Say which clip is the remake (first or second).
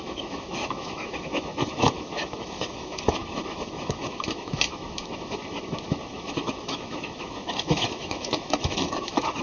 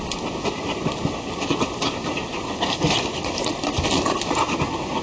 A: first